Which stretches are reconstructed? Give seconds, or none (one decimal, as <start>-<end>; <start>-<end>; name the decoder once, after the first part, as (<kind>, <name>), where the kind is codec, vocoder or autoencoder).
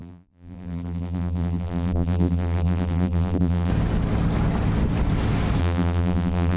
0.0-3.7 (vocoder, BigVGAN v2); 5.6-6.6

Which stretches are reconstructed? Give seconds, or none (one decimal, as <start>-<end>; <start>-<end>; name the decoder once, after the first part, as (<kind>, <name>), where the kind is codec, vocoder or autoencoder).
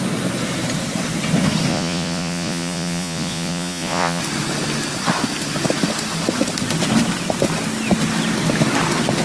1.7-4.2 (vocoder, Vocos)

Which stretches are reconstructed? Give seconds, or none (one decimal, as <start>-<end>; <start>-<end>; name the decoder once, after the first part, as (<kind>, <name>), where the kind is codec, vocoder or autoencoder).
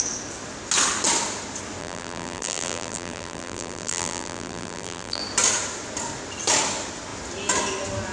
1.8-5.2 (vocoder, BigVGAN v2)